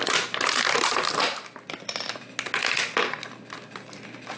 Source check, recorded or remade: recorded